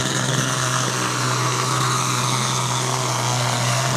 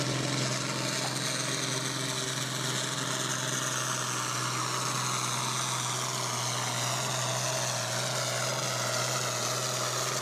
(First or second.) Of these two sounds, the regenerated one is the first